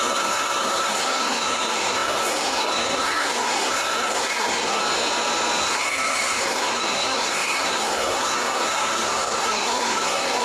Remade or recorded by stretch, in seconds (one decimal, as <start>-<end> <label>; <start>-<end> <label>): 0.0-4.8 remade; 4.8-5.6 recorded; 5.6-10.4 remade